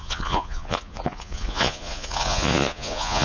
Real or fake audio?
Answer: fake